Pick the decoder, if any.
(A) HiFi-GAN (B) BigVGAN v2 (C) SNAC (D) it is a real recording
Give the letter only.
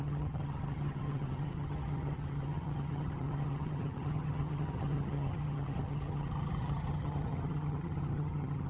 A